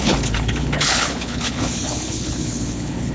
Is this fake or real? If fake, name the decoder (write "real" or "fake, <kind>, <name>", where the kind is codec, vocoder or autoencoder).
fake, codec, HILCodec